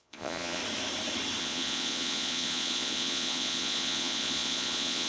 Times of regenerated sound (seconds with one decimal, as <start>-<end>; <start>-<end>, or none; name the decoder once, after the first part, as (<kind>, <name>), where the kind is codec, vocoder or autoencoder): 0.0-0.6 (vocoder, Vocos); 1.4-5.1